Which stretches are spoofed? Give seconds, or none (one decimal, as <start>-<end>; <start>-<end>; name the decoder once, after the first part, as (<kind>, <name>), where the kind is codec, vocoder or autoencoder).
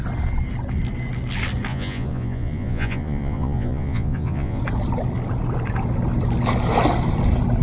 1.7-4.6 (vocoder, Vocos)